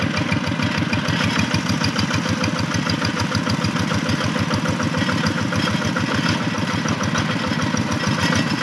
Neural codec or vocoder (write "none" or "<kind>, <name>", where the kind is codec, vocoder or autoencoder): none